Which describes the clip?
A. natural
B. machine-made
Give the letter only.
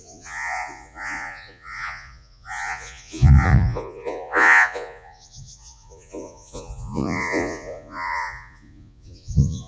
B